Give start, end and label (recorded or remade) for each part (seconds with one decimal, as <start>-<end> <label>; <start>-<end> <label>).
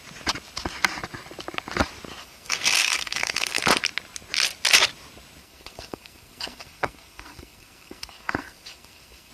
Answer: 0.0-2.2 recorded; 2.2-3.6 remade; 3.6-5.4 recorded; 5.4-9.3 remade